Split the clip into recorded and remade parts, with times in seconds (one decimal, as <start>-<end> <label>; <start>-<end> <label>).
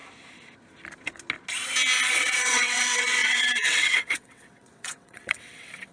0.0-2.1 recorded; 2.1-5.9 remade